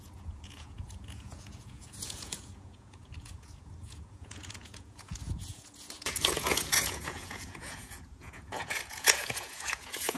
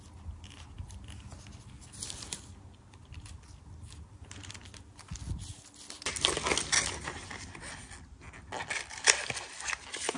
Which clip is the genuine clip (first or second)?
second